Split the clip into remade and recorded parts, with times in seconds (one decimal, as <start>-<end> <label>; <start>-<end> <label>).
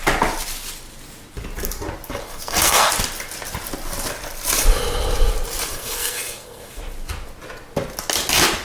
0.0-2.2 recorded; 2.2-2.9 remade; 2.9-5.7 recorded; 5.7-6.8 remade; 6.8-8.6 recorded